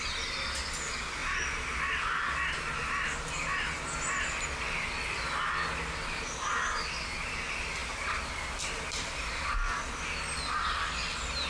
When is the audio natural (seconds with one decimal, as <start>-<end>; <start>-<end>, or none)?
0.0-11.5